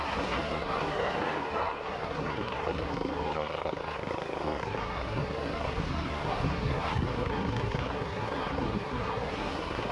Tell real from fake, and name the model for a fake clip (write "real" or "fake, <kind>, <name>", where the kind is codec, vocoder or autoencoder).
fake, codec, SNAC